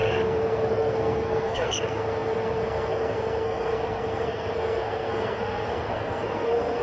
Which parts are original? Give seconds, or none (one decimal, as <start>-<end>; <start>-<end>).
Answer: none